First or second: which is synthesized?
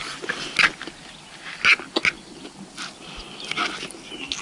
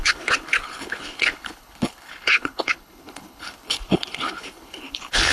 second